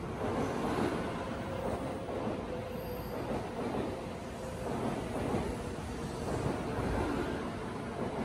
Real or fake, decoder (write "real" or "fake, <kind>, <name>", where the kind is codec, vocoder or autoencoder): real